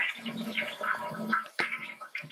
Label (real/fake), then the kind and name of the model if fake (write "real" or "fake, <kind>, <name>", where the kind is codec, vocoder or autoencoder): fake, autoencoder, DAC-VAE